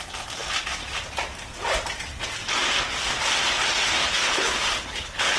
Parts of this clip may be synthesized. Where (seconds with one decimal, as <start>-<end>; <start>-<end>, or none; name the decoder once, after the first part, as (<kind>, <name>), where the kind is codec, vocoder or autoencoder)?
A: 4.0-5.4 (codec, HILCodec)